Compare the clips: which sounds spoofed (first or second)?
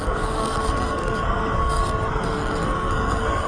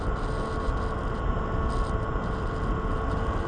first